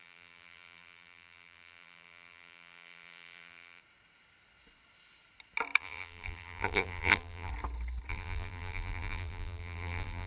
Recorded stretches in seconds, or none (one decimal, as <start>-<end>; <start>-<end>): 3.8-5.8; 7.5-8.1